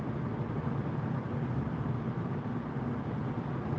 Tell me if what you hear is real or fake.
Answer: real